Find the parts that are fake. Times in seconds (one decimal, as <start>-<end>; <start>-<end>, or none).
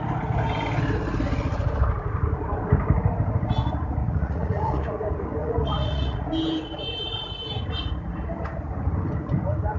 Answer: 4.0-5.0; 5.4-6.3